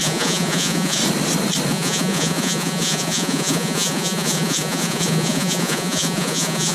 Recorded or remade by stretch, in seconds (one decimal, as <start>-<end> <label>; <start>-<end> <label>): 0.0-1.0 remade; 1.0-1.7 recorded; 1.7-6.7 remade